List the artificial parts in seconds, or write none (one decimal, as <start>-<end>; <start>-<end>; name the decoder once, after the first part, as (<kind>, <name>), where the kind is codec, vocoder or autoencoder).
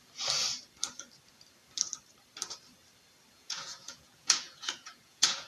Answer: 3.3-5.5 (vocoder, Vocos)